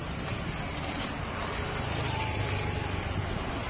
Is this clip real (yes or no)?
yes